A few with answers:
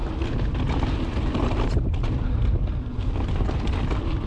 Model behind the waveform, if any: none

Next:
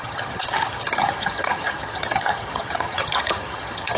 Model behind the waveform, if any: vocoder, HiFi-GAN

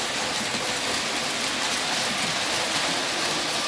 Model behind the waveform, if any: none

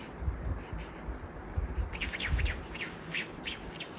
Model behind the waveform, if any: none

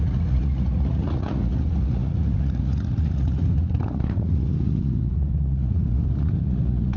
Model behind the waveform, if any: vocoder, Vocos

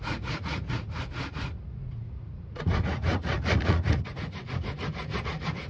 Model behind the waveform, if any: vocoder, Vocos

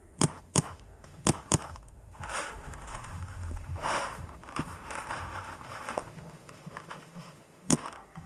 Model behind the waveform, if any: autoencoder, DAC-VAE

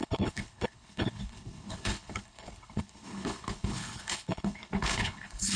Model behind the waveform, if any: codec, HILCodec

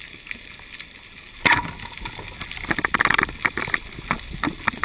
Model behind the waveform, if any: none